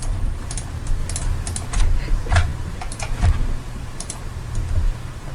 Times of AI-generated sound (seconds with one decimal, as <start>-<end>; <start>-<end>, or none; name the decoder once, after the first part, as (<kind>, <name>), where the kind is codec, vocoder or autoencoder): 0.0-1.0 (vocoder, BigVGAN v2); 1.8-5.3